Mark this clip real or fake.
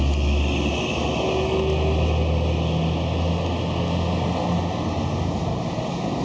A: real